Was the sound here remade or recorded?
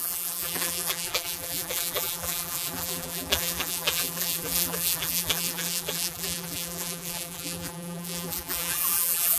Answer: remade